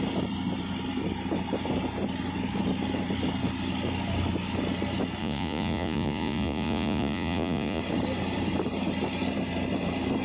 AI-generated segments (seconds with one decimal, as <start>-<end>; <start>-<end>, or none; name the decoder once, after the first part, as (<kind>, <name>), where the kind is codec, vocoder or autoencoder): 5.2-7.8 (vocoder, Vocos)